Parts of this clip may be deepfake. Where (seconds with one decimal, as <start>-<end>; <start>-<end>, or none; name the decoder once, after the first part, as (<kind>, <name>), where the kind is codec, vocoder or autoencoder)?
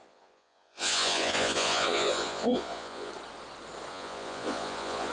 0.0-3.1 (vocoder, Vocos); 3.9-5.1